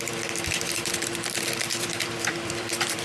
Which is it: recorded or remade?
remade